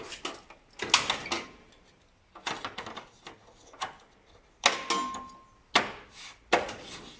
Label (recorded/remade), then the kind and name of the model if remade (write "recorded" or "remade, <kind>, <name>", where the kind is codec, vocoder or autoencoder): recorded